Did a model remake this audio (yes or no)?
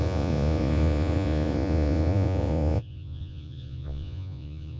yes